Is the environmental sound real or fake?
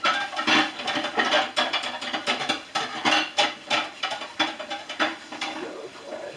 real